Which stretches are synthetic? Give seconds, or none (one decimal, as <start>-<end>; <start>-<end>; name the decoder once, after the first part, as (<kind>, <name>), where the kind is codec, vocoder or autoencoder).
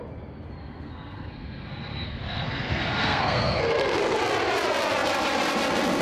0.6-4.2 (codec, SNAC)